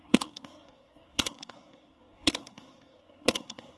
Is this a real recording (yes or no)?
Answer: no